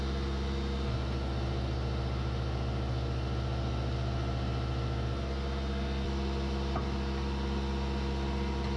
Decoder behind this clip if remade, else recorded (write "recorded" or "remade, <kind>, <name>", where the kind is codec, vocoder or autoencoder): recorded